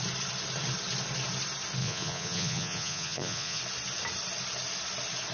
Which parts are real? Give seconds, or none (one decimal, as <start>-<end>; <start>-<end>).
0.0-1.8; 3.6-5.3